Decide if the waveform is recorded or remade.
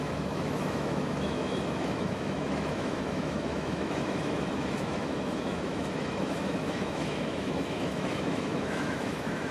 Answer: remade